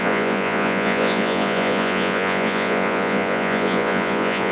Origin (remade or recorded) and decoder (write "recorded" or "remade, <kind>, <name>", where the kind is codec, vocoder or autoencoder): remade, vocoder, Vocos